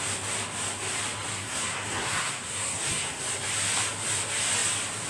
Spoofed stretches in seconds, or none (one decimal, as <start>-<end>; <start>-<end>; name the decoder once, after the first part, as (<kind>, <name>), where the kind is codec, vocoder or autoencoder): 1.3-3.2 (codec, SNAC)